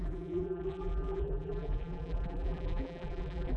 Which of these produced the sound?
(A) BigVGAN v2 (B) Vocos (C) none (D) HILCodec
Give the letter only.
A